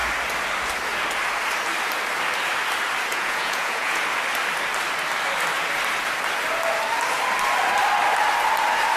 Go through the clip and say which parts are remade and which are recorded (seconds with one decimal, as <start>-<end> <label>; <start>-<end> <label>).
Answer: 0.0-3.1 recorded; 3.1-4.0 remade; 4.0-9.0 recorded